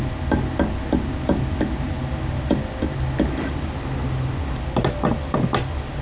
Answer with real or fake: real